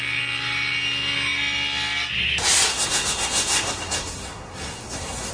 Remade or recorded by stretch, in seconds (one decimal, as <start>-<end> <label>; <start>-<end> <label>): 0.0-2.7 recorded; 2.7-5.3 remade